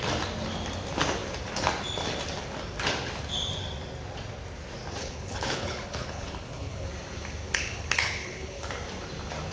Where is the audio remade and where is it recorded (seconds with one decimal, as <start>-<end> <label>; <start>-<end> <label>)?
0.0-5.0 recorded; 5.0-6.9 remade; 6.9-7.4 recorded; 7.4-8.7 remade; 8.7-9.5 recorded